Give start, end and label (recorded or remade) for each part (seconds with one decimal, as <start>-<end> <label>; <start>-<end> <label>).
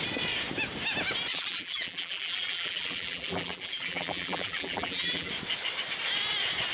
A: 0.0-1.3 recorded; 1.3-5.3 remade; 5.3-6.7 recorded